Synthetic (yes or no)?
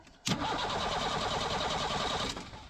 no